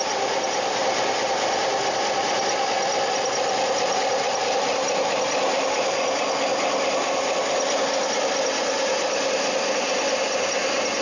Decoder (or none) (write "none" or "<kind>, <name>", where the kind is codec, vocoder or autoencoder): none